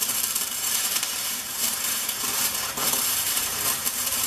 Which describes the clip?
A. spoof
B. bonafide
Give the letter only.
A